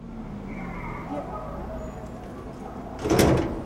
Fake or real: real